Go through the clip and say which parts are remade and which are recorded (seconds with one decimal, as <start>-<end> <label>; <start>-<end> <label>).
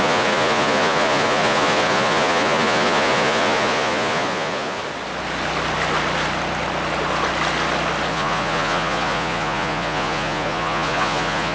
0.0-4.8 remade; 4.8-8.1 recorded; 8.1-11.5 remade